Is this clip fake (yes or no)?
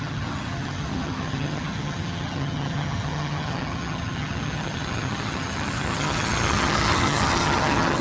yes